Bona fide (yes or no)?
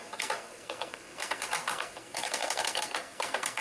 no